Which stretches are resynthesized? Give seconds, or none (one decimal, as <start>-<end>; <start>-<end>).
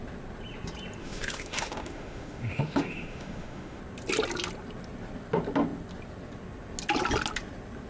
1.0-3.8